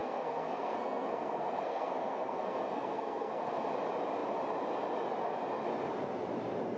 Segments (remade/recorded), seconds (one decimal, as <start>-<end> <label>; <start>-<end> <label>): 0.0-3.6 remade; 3.6-6.8 recorded